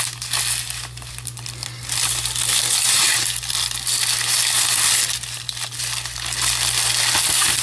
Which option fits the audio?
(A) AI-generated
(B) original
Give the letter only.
B